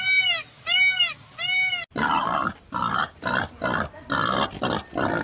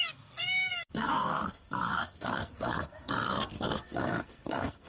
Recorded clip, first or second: first